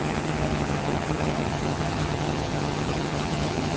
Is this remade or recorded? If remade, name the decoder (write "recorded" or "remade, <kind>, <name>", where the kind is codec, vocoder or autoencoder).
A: remade, vocoder, HiFi-GAN